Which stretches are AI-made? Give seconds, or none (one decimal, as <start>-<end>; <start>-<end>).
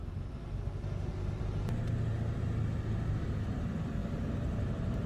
3.1-5.1